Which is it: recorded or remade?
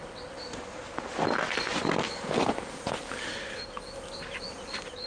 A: recorded